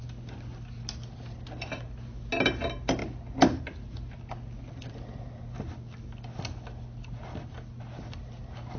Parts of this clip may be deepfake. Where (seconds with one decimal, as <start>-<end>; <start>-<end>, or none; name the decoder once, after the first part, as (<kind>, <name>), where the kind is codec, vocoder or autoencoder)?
none